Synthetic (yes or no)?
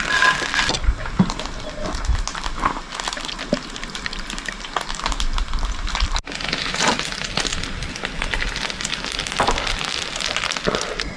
no